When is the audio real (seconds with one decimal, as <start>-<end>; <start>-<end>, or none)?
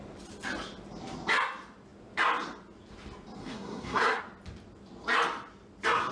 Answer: 0.0-3.4; 4.2-6.1